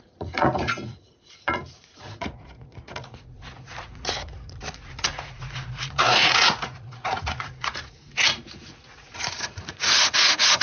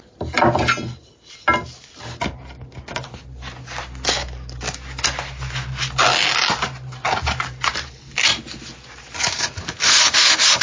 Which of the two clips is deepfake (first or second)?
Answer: first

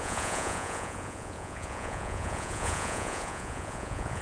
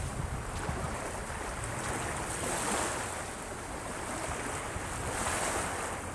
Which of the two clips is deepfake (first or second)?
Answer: first